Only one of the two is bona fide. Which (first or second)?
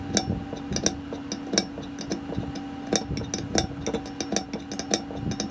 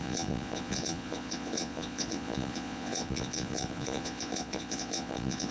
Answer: first